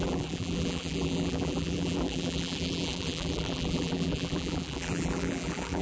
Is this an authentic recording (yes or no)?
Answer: no